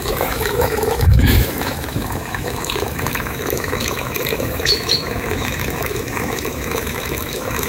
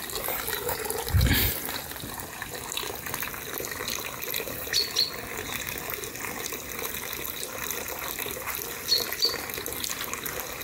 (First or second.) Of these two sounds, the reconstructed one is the first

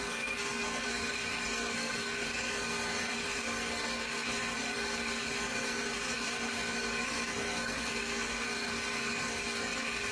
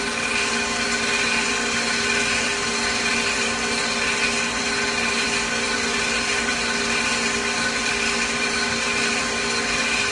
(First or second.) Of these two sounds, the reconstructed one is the first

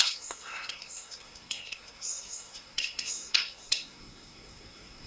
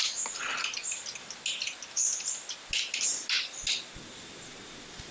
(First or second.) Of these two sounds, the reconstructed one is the first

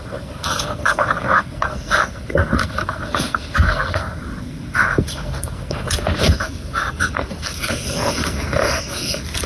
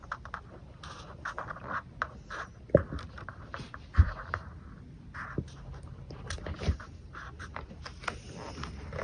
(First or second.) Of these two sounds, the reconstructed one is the first